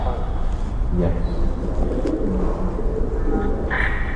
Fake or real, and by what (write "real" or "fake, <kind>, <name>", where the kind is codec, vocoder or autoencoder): real